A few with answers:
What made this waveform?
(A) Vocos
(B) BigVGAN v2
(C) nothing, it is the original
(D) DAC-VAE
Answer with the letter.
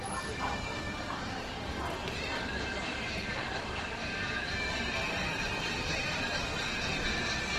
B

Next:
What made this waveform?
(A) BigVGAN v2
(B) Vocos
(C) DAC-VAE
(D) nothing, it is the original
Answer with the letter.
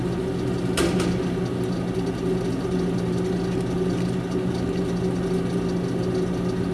D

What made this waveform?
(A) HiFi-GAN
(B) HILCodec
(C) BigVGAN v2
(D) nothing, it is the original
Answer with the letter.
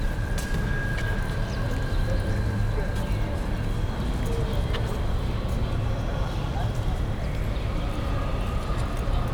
D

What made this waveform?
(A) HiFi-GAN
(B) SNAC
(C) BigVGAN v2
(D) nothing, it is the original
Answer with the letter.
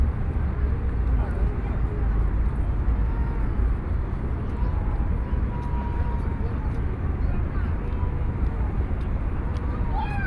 D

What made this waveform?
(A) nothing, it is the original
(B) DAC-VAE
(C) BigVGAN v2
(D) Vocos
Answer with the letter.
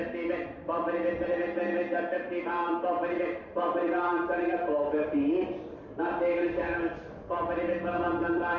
C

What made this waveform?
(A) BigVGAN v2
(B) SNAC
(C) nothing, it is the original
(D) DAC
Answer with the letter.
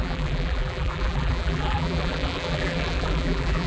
A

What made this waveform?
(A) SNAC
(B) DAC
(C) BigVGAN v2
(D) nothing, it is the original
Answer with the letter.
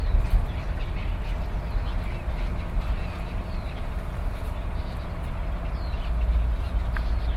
D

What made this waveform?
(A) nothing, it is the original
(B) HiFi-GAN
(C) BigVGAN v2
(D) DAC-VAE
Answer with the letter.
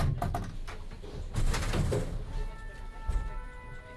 A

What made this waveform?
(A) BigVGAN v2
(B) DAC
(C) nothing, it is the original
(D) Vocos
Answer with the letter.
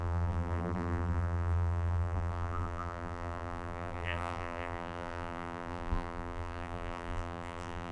A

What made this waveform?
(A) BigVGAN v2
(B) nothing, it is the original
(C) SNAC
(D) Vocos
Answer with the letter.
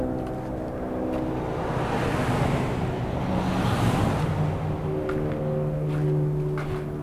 B